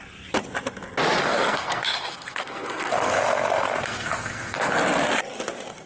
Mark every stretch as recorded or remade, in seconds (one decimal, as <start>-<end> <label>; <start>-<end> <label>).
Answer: 0.0-1.2 recorded; 1.2-4.7 remade; 4.7-5.9 recorded